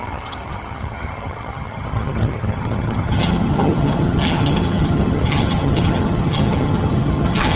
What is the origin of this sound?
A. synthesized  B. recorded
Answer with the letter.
A